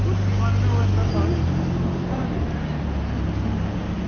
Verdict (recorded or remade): recorded